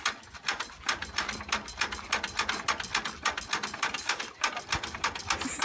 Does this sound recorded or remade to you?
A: recorded